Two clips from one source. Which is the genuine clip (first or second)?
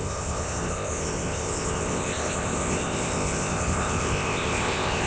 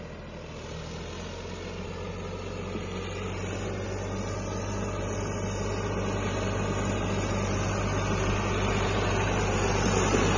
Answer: second